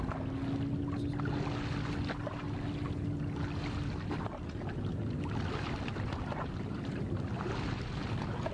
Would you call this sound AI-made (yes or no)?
no